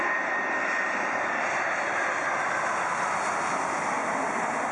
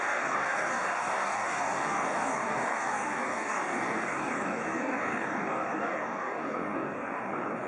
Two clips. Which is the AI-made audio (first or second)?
second